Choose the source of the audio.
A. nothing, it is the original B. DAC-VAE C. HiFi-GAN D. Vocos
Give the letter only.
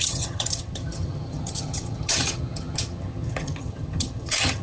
C